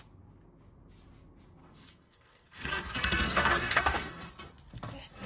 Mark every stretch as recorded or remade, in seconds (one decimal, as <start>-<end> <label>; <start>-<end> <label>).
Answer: 0.0-1.6 recorded; 1.6-4.3 remade; 4.3-5.3 recorded